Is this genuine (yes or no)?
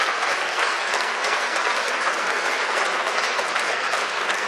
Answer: no